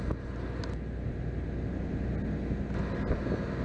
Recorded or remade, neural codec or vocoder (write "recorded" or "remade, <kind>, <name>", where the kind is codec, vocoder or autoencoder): recorded